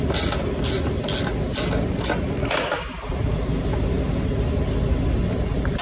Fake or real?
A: real